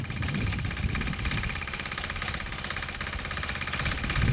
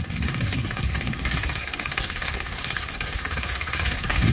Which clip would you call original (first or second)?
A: first